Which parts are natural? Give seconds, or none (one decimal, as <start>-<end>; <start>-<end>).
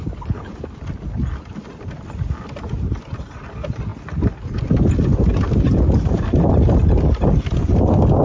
0.5-8.2